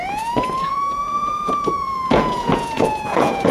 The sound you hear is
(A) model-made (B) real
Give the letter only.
A